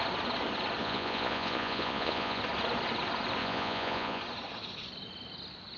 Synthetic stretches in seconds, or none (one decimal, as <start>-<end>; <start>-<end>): 0.8-2.4; 3.4-4.2